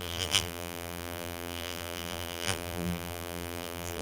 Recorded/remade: remade